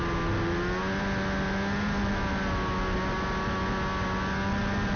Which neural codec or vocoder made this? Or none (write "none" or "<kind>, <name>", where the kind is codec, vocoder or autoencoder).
none